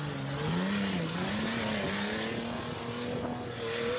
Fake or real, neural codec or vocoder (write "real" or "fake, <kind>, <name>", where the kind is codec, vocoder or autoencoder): real